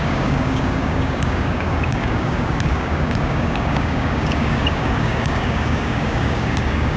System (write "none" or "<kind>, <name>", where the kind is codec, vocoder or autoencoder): codec, DAC